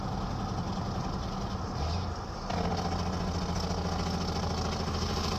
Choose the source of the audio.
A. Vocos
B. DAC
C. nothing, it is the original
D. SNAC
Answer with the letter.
C